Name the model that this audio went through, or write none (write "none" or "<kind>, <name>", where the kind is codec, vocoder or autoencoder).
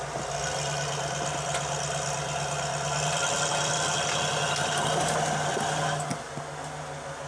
none